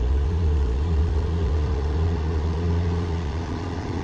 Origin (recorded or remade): remade